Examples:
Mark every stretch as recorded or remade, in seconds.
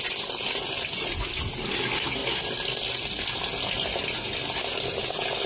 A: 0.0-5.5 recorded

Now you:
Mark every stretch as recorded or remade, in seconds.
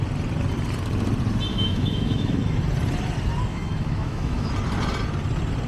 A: 0.0-1.5 recorded; 1.5-2.4 remade; 2.4-3.5 recorded; 3.5-4.5 remade; 4.5-5.7 recorded